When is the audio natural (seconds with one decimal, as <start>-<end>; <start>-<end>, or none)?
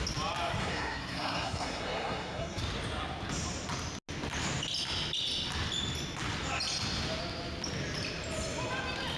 0.0-0.6; 2.6-9.2